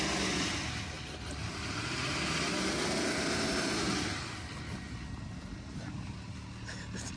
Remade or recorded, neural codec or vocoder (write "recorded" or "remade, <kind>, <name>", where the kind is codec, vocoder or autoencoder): recorded